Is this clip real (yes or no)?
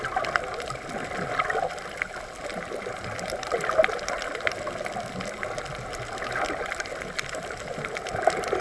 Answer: yes